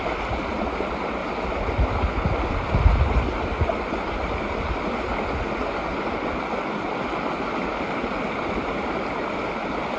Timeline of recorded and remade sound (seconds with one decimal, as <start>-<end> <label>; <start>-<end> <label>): 0.0-10.0 recorded